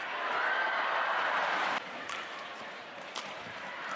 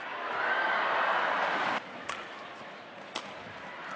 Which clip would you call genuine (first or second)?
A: second